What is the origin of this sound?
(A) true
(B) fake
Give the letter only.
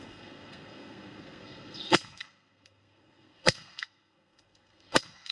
B